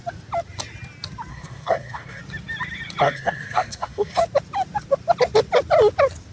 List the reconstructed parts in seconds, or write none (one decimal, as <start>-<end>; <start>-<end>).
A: 1.3-2.2; 3.0-4.2